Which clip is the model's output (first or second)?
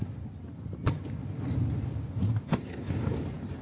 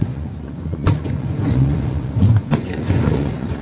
second